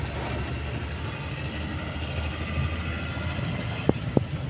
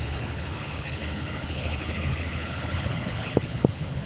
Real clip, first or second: first